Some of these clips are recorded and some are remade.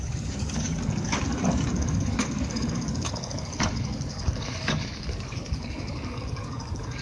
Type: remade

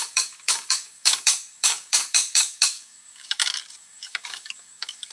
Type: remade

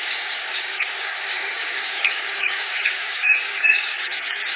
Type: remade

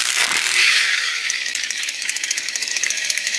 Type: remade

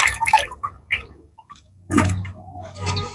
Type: remade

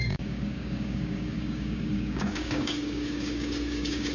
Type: remade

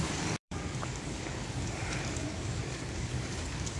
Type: remade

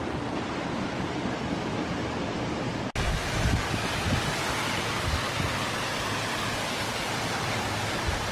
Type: recorded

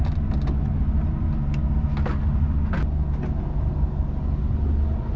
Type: recorded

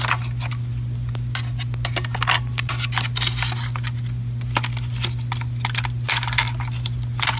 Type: recorded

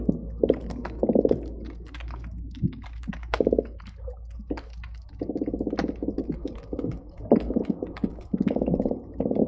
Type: remade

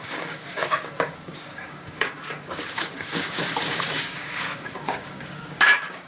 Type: remade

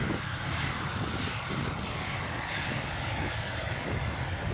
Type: remade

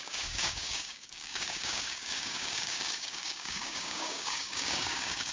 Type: remade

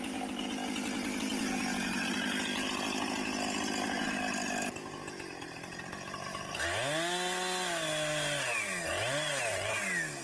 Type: recorded